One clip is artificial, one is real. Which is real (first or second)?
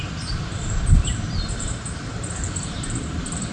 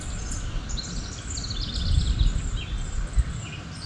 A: second